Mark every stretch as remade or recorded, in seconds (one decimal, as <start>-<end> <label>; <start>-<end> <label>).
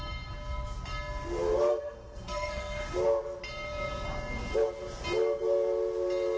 0.0-1.7 recorded; 1.7-2.8 remade; 2.8-6.4 recorded